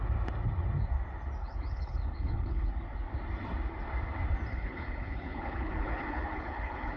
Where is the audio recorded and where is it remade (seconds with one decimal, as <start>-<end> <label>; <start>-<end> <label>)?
0.0-1.4 recorded; 1.4-2.7 remade; 2.7-4.5 recorded; 4.5-7.0 remade